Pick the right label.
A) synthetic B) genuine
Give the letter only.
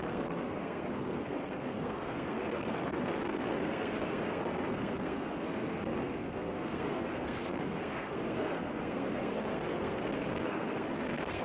A